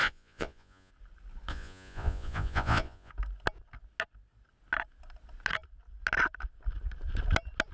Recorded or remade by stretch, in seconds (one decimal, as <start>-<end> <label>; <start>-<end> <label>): 0.0-0.9 remade; 0.9-1.5 recorded; 1.5-3.1 remade; 3.1-7.7 recorded